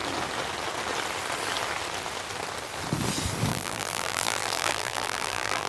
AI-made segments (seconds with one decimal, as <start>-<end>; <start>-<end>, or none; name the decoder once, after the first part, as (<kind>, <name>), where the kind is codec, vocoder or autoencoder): 3.5-5.7 (vocoder, BigVGAN v2)